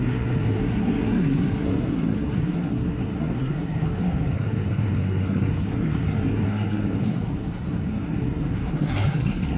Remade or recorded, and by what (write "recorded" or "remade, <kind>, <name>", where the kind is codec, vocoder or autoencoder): remade, codec, SNAC